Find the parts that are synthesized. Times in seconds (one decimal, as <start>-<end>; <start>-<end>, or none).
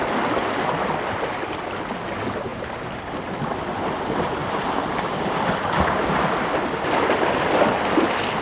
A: none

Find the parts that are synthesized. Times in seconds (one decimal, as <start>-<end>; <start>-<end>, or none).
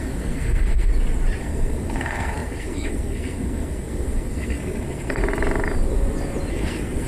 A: 0.0-0.9; 1.4-5.2; 6.5-7.1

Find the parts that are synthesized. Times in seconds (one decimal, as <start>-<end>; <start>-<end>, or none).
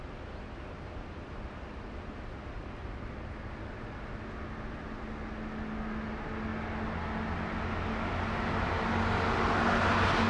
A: 2.8-3.5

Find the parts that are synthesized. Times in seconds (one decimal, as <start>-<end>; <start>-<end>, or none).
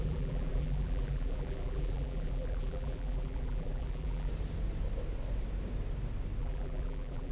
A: 0.0-4.3; 6.4-7.3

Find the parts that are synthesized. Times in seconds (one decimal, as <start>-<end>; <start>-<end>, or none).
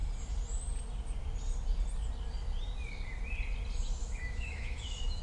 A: 4.0-5.2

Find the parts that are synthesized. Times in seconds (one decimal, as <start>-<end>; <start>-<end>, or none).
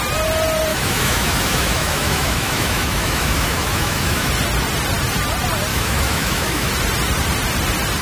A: 0.7-4.3; 5.7-6.7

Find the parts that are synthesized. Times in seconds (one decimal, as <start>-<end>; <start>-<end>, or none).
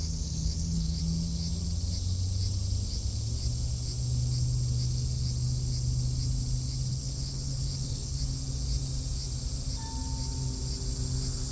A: 0.0-1.0; 6.9-8.2